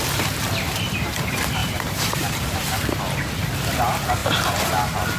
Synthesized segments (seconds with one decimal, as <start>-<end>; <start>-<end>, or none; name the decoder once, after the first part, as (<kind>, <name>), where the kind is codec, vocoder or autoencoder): 1.6-2.7 (vocoder, BigVGAN v2); 4.2-4.8